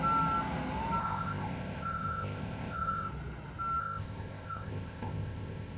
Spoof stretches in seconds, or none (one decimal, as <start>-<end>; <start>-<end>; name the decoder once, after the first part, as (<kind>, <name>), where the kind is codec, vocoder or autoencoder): 1.0-3.1 (codec, ZipCodec); 3.8-5.8